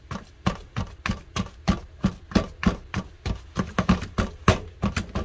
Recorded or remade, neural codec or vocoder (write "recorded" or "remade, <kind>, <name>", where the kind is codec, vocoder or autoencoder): recorded